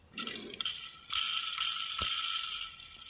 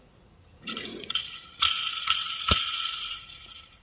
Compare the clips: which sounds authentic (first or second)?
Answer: first